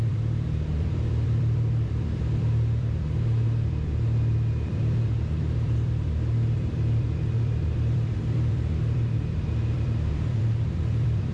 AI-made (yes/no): yes